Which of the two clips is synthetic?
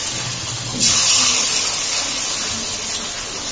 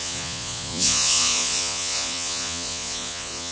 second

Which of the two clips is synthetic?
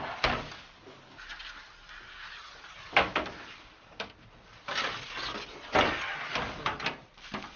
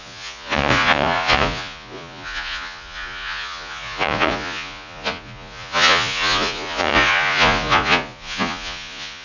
second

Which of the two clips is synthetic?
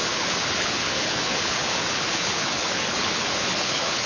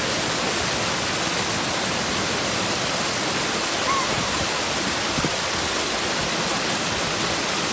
first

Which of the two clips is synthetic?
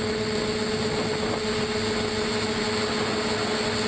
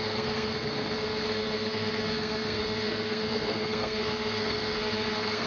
second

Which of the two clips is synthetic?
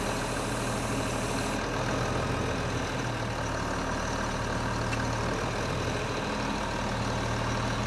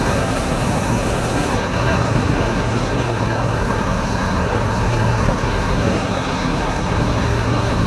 second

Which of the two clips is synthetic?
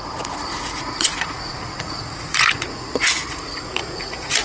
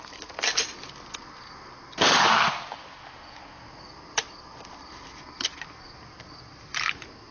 first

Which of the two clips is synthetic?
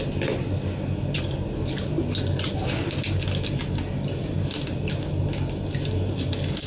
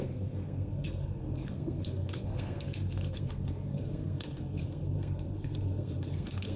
second